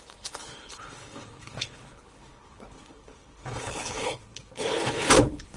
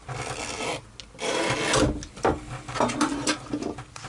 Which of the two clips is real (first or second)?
second